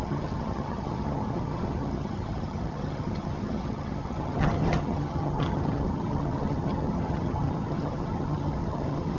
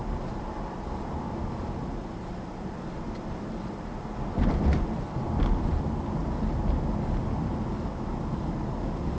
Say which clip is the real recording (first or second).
second